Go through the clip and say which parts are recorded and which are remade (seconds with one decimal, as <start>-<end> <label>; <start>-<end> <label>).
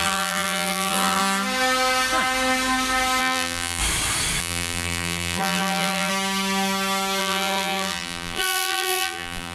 0.0-1.2 remade; 1.2-3.2 recorded; 3.2-3.8 remade; 3.8-4.4 recorded; 4.4-6.1 remade; 6.1-7.2 recorded; 7.2-9.5 remade